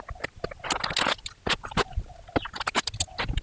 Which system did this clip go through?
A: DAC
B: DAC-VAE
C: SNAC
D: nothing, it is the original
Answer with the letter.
D